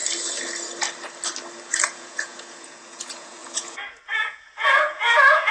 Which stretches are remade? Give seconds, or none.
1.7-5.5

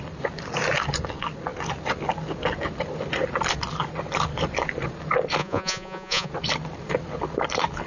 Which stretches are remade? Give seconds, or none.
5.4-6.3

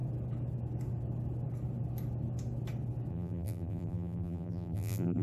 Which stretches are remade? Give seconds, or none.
3.1-5.2

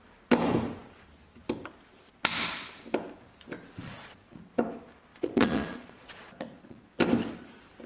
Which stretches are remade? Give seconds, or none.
3.8-4.4; 5.1-7.0

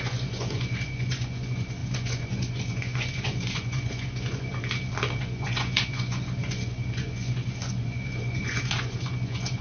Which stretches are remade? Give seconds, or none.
0.0-4.5; 5.2-9.6

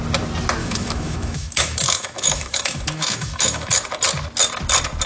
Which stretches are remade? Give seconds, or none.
0.6-3.7